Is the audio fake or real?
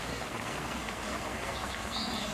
fake